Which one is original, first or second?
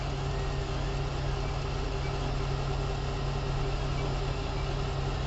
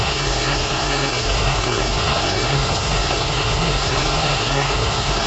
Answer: first